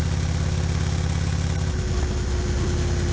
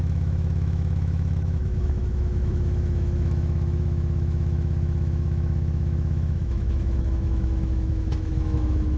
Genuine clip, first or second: first